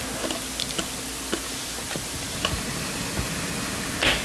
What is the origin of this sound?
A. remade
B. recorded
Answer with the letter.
B